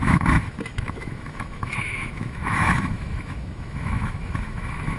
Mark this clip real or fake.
fake